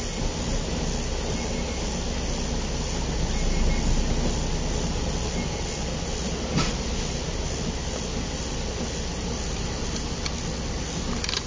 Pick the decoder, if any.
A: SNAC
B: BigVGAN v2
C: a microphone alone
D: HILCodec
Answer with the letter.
C